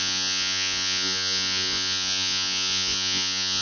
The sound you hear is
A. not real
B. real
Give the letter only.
A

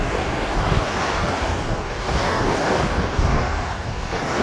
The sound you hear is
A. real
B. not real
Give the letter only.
B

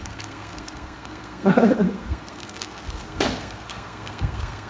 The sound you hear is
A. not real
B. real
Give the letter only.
A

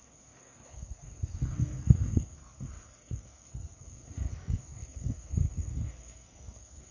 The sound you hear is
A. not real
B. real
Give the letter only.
A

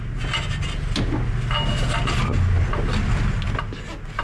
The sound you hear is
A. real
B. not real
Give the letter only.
A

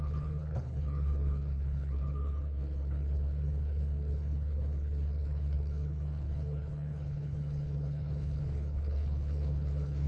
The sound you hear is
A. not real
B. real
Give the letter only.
A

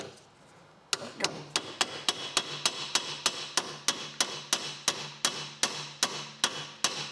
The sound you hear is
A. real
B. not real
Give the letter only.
A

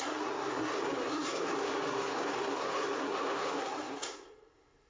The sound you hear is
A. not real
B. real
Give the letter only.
A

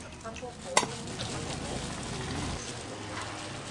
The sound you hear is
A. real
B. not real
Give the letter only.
A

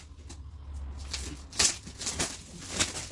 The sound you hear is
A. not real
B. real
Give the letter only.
B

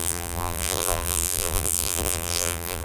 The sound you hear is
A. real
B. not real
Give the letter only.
B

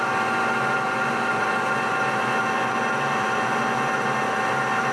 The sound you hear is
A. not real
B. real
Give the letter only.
B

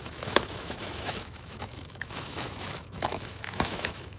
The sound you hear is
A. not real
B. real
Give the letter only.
A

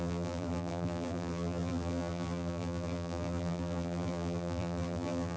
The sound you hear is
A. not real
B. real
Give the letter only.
A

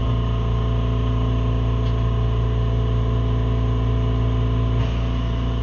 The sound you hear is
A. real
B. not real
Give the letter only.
A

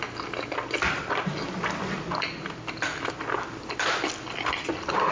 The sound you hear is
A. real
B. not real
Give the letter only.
A